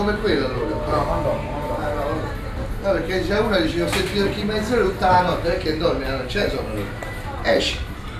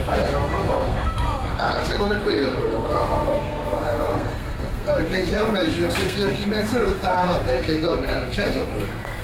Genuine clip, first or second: first